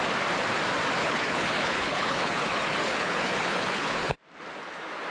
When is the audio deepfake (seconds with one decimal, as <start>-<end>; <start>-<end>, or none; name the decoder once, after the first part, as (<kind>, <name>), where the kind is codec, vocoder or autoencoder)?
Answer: 1.0-4.1 (codec, HILCodec)